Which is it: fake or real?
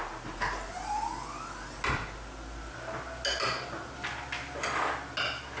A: real